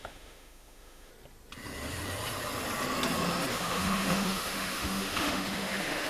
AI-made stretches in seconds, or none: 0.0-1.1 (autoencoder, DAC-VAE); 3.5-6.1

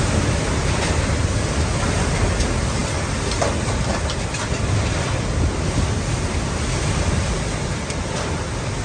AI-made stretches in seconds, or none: none

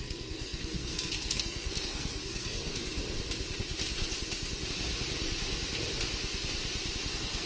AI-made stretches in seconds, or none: 0.0-3.0 (codec, SNAC); 7.1-7.5

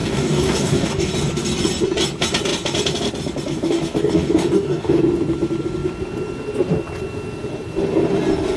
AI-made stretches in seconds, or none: 0.0-1.1 (codec, DAC); 3.5-5.0

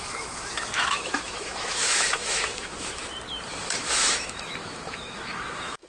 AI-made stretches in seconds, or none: 0.0-3.0 (autoencoder, DAC-VAE); 3.5-5.9

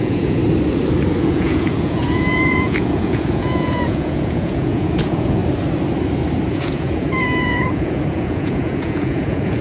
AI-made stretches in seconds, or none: 0.0-0.4 (vocoder, Vocos); 1.2-5.4; 6.5-9.6